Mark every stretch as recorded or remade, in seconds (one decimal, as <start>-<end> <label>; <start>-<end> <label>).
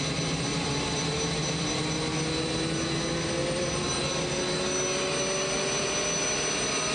0.0-0.5 recorded; 0.5-1.2 remade; 1.2-3.4 recorded; 3.4-4.0 remade; 4.0-6.9 recorded